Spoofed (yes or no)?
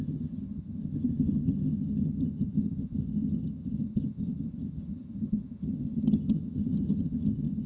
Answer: yes